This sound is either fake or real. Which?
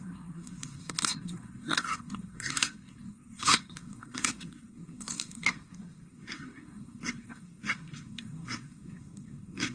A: fake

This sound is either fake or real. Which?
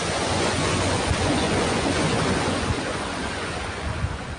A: fake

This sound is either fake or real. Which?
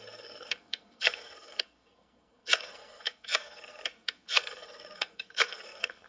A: fake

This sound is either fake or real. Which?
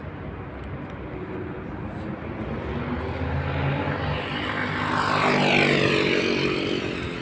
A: real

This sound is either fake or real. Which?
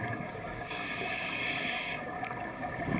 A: fake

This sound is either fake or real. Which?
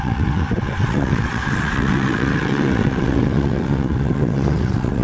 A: fake